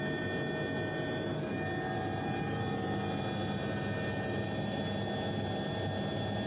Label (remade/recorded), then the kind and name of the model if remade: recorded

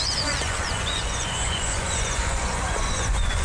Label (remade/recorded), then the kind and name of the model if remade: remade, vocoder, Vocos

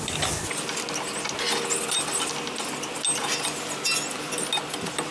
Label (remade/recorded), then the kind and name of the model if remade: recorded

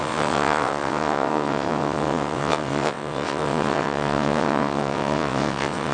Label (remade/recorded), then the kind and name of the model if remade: remade, vocoder, WaveNeXt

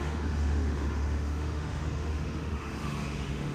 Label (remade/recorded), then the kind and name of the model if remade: remade, autoencoder, DAC-VAE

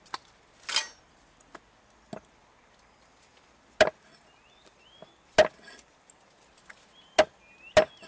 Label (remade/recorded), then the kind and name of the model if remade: recorded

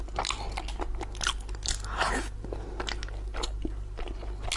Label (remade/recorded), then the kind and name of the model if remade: recorded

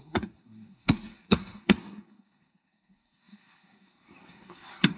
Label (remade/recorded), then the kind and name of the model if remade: remade, codec, SNAC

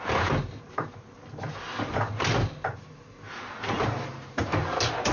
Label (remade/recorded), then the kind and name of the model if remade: recorded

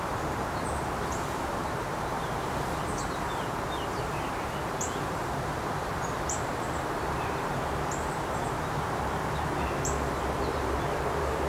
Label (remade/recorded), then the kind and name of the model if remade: remade, vocoder, BigVGAN v2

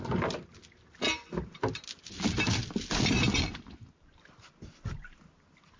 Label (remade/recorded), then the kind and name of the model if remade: recorded